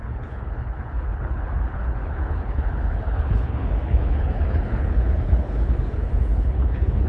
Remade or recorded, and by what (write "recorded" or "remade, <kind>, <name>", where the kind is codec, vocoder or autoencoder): remade, codec, HILCodec